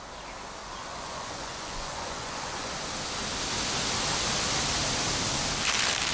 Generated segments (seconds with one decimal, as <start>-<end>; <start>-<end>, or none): 0.6-2.7